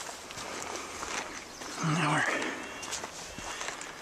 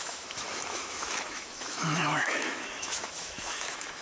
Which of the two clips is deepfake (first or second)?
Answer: second